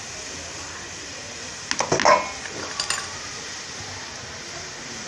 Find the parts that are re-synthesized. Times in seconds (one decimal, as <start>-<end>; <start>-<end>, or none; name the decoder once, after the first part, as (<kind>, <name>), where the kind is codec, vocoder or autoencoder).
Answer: none